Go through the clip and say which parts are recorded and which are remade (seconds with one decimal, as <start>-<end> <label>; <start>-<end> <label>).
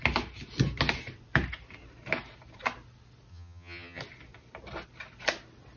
0.0-3.3 recorded; 3.3-4.0 remade; 4.0-5.8 recorded